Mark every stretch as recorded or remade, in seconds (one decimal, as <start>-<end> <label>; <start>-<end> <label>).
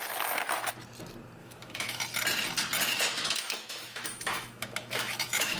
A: 0.0-1.4 recorded; 1.4-2.0 remade; 2.0-2.9 recorded; 2.9-5.6 remade